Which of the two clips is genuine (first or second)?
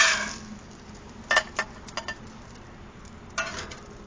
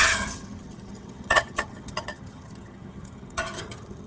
first